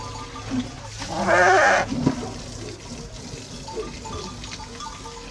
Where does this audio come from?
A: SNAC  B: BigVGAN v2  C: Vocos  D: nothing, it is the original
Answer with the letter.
D